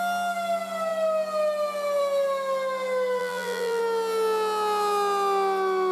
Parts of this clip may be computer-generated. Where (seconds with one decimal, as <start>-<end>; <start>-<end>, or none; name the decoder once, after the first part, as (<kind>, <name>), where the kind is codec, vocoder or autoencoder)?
3.2-3.8 (vocoder, BigVGAN v2)